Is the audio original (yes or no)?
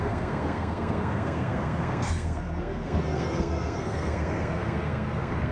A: no